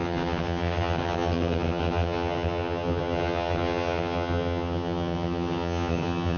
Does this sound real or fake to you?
fake